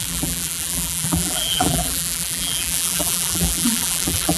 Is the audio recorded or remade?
remade